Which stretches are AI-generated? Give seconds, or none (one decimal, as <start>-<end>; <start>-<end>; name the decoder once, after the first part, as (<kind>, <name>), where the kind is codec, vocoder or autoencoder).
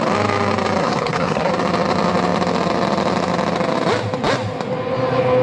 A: 0.8-1.5 (codec, SNAC)